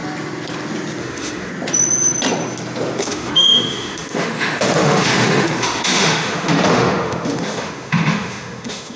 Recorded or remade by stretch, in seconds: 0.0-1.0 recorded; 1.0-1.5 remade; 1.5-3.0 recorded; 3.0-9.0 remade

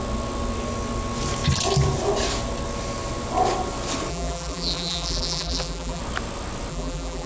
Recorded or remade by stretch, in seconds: 0.0-4.1 recorded; 4.1-6.0 remade; 6.0-6.7 recorded; 6.7-7.3 remade